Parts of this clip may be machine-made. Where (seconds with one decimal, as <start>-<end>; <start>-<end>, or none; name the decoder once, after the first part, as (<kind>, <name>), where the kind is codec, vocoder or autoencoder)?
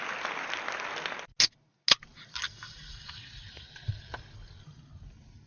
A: none